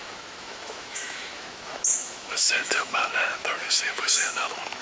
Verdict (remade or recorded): remade